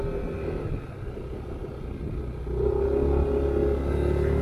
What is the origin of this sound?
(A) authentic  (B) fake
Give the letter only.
A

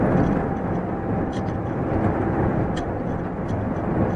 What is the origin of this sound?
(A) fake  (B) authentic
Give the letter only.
A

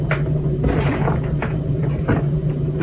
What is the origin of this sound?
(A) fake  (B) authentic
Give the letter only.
A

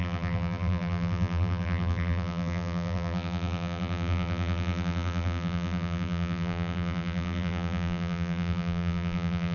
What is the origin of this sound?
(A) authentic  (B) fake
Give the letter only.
B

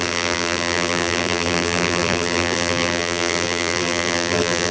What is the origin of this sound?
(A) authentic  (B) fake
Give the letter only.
B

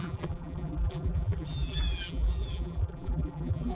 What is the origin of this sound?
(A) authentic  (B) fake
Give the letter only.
B